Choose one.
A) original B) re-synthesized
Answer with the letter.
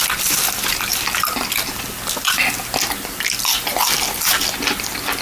A